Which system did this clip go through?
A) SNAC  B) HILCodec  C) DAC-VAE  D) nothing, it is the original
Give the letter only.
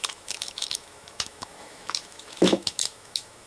C